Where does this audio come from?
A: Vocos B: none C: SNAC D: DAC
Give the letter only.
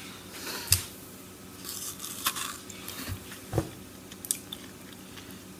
B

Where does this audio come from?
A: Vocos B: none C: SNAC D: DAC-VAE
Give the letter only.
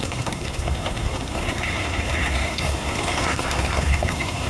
C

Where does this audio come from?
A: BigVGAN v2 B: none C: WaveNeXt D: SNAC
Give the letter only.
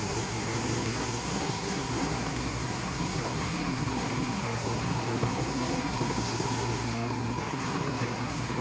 D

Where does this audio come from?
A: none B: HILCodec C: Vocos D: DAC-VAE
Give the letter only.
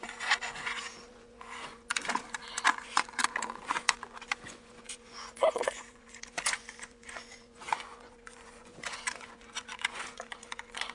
C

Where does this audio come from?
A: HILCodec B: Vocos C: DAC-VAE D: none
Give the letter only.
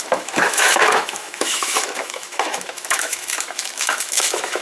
C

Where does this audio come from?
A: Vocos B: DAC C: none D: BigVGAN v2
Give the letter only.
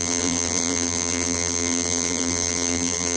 D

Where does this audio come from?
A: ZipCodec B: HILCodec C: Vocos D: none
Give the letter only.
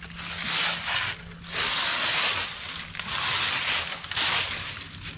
D